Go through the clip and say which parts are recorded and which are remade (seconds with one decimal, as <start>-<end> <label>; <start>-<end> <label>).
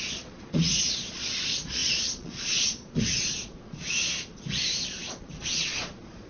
0.0-6.3 remade